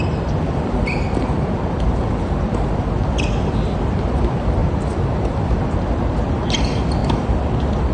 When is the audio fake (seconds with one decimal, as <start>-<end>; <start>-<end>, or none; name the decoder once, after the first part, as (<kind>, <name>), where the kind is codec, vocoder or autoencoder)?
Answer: 0.0-4.6 (vocoder, BigVGAN v2); 5.4-7.9